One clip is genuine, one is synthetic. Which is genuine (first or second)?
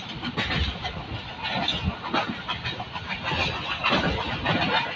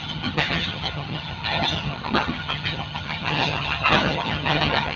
first